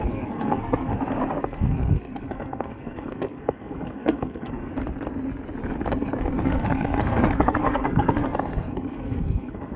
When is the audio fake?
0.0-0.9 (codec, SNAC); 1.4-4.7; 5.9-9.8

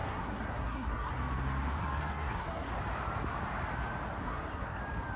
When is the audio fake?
0.0-1.1 (codec, SNAC); 1.8-2.7; 4.2-4.8

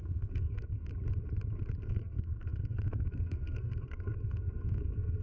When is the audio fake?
0.0-0.9 (codec, SNAC); 1.8-5.2

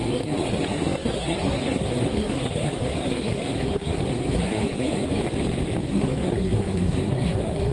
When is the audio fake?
0.0-5.2 (codec, SNAC); 5.9-7.7

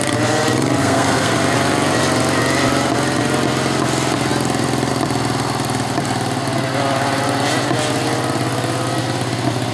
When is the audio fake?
0.8-1.3 (codec, SNAC)

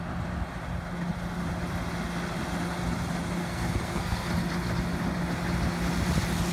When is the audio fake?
3.4-4.3 (codec, SNAC)